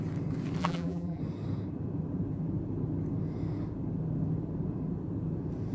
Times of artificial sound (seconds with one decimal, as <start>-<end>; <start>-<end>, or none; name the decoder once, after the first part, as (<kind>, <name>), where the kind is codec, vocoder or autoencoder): 0.6-1.2 (vocoder, BigVGAN v2)